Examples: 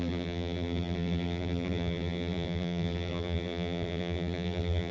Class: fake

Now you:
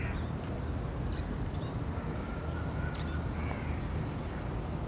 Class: real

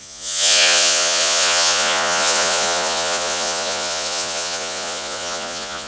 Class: fake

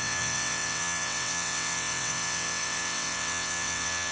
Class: fake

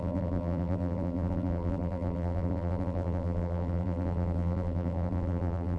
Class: fake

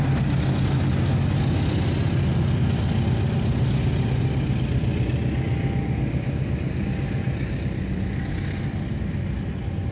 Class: real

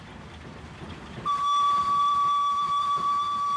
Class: real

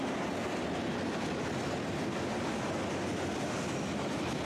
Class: real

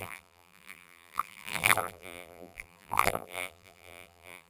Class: fake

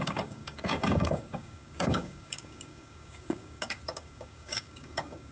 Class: fake